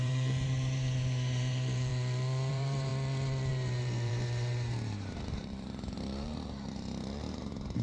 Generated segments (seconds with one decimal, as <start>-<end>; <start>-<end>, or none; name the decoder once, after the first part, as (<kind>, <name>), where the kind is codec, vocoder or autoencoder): 0.0-1.9 (vocoder, BigVGAN v2); 2.5-2.9; 3.5-7.8